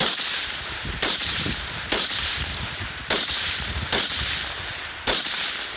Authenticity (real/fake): fake